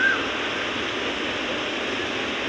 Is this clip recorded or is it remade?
recorded